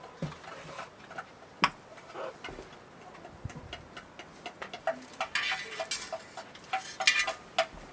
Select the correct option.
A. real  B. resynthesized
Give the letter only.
A